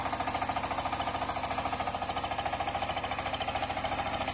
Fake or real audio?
real